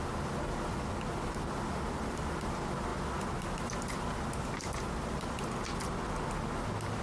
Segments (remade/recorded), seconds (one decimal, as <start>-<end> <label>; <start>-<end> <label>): 0.0-7.0 recorded